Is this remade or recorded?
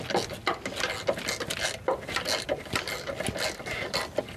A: recorded